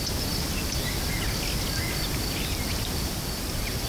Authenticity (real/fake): real